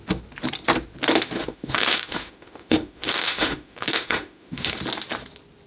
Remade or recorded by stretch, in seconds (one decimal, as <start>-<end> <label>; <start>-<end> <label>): 0.0-1.4 recorded; 1.4-4.8 remade; 4.8-5.7 recorded